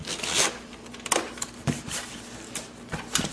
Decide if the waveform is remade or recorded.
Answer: remade